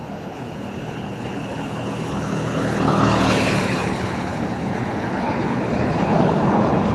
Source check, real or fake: fake